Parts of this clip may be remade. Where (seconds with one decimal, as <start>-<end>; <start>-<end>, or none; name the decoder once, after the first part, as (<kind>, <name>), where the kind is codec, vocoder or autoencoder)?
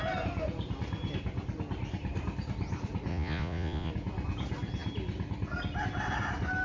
3.1-3.9 (vocoder, Vocos)